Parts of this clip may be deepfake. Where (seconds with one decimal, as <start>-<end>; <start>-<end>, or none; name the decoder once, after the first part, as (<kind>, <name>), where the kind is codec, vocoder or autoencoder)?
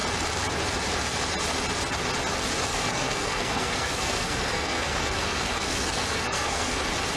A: 2.7-6.8 (codec, SNAC)